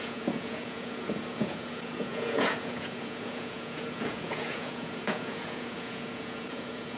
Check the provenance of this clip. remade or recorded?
remade